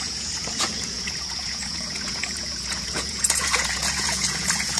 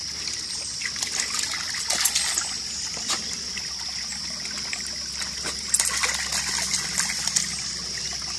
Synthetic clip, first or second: first